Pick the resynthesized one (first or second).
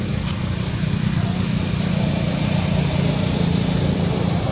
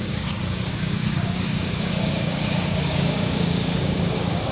second